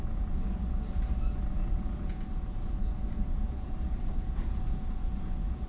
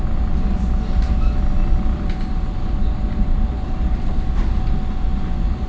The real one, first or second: second